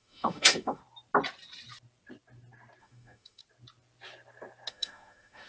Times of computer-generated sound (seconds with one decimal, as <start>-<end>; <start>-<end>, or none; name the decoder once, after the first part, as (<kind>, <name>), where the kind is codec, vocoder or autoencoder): 0.0-0.8 (autoencoder, DAC-VAE); 2.8-3.4; 4.7-5.5